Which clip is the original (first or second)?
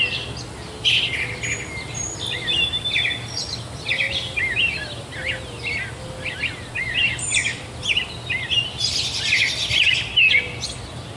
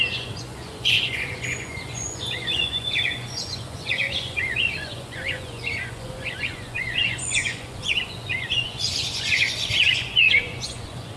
first